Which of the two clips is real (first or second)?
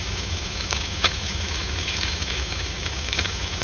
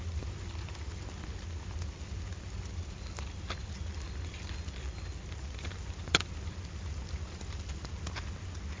second